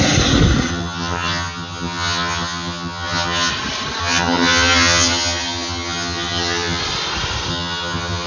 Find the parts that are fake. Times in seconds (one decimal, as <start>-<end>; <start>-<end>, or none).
0.7-3.5; 4.0-6.8; 7.5-8.3